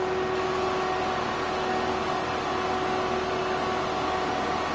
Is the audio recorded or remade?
recorded